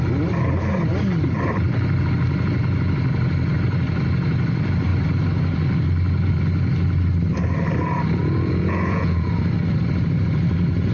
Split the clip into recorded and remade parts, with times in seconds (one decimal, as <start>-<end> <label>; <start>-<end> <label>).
0.0-8.2 recorded; 8.2-9.3 remade; 9.3-10.9 recorded